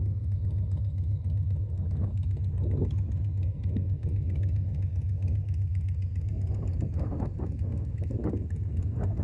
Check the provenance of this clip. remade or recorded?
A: remade